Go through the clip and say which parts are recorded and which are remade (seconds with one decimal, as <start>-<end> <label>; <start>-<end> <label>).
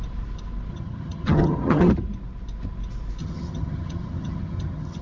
0.0-0.7 recorded; 0.7-1.9 remade; 1.9-3.2 recorded; 3.2-5.0 remade